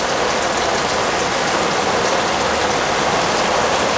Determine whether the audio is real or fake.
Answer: real